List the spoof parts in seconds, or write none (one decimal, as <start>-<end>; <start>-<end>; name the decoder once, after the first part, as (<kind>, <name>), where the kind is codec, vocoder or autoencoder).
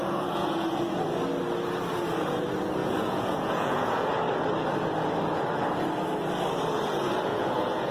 0.0-0.7 (vocoder, Vocos); 2.8-4.1; 7.3-7.9